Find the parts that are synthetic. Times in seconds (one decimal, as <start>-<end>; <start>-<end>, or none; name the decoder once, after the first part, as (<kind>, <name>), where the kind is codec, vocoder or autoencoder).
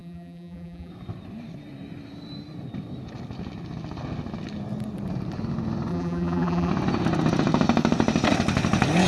0.0-0.9 (vocoder, BigVGAN v2); 5.9-6.7